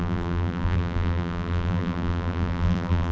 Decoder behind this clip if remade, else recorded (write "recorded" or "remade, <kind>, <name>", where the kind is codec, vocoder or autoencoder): remade, vocoder, BigVGAN v2